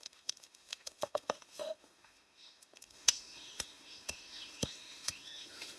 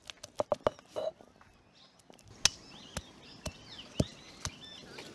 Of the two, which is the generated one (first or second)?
first